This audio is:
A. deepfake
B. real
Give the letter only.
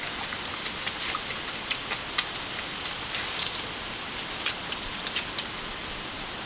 A